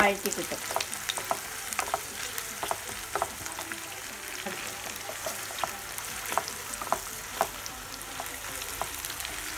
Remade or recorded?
recorded